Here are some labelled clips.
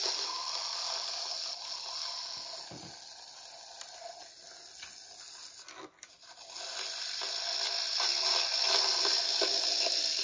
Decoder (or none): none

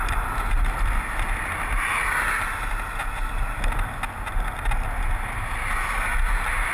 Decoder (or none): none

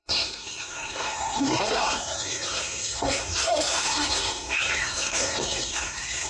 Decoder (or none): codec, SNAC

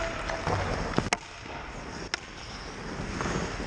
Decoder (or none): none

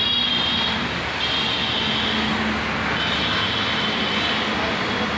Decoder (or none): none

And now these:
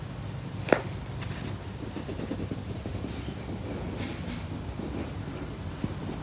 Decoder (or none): none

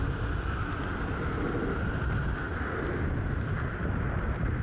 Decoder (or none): none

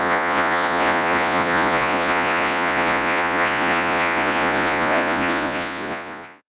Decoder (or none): vocoder, Vocos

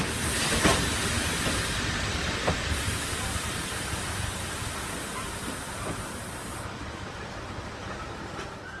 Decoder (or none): none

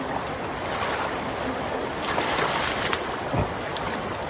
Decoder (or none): none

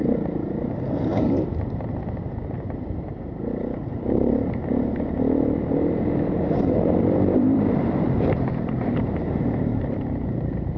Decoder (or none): vocoder, BigVGAN v2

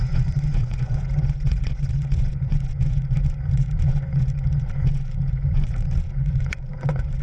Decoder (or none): vocoder, Vocos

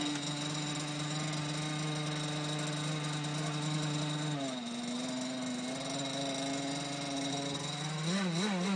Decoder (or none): none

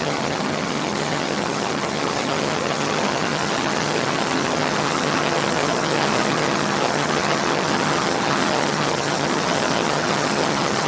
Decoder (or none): vocoder, HiFi-GAN